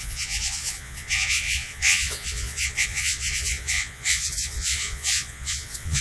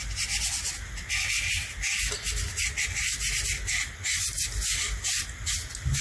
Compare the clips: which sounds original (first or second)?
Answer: second